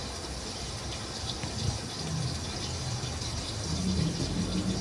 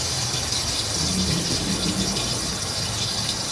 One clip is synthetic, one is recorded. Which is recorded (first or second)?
first